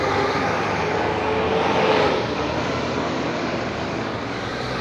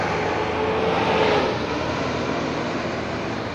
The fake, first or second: first